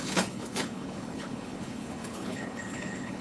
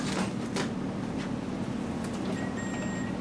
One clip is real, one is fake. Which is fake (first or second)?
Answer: first